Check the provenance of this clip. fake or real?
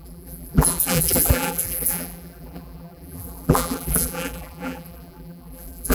fake